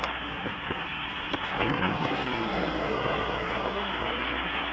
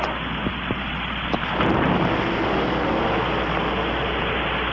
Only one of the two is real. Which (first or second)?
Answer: second